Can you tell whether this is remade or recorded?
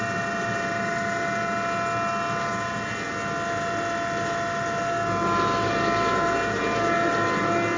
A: recorded